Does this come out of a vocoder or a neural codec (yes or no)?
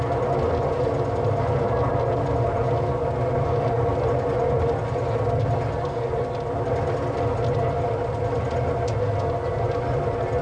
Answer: no